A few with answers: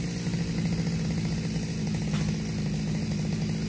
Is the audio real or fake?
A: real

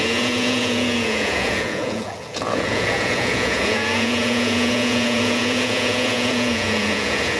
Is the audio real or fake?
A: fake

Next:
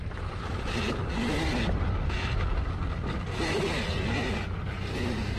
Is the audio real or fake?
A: real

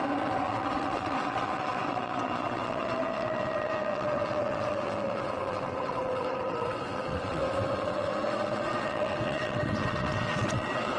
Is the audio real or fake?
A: fake